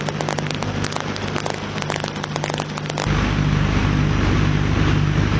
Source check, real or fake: real